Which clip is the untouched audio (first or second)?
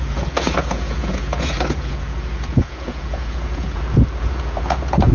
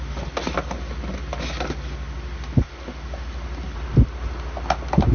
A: second